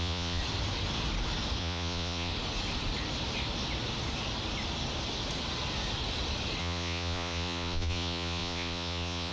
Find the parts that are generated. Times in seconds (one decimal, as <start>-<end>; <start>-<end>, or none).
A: 0.0-0.4; 1.6-2.3; 6.6-9.3